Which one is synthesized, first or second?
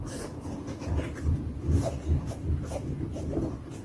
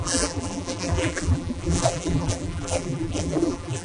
second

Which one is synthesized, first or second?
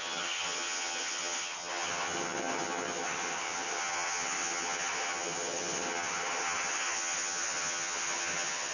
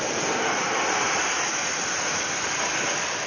first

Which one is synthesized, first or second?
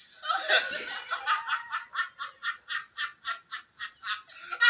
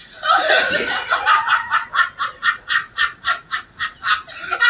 second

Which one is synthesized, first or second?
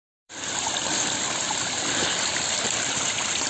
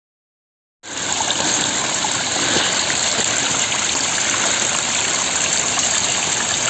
first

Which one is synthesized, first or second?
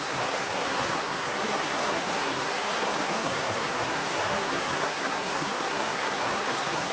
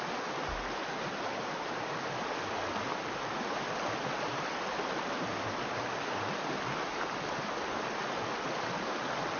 first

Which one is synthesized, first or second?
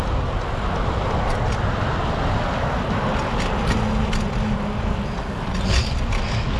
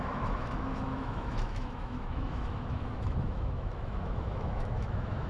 second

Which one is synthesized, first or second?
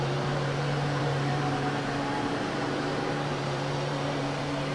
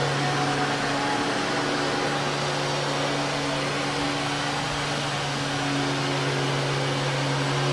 first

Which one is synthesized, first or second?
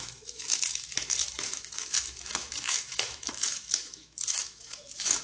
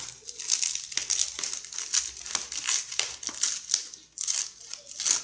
first